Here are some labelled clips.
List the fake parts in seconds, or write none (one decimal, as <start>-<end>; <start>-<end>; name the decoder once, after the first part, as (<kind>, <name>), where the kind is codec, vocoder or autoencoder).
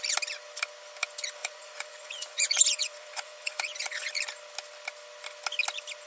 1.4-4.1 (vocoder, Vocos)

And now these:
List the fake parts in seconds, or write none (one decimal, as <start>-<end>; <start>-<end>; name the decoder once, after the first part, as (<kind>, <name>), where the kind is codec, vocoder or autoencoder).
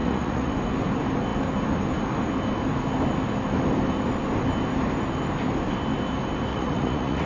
0.0-0.5 (vocoder, Vocos); 6.5-7.3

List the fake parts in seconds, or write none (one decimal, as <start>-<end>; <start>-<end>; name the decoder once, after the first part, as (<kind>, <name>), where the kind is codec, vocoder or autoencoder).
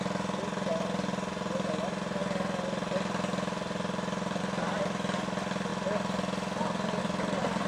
none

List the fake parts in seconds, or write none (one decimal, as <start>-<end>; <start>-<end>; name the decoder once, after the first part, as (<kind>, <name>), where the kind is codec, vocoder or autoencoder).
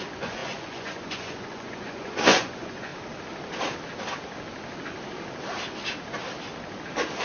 0.0-2.9 (vocoder, Vocos)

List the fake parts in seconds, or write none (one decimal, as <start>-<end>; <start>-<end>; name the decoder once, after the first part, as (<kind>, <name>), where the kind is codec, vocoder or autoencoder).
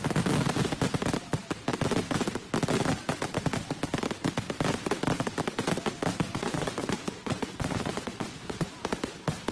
6.3-8.7 (vocoder, Vocos)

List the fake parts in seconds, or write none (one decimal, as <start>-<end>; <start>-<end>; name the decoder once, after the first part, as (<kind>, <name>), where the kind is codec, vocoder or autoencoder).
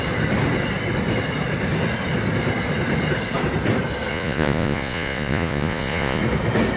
4.1-6.2 (vocoder, Vocos)